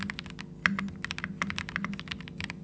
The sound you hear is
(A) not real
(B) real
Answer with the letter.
B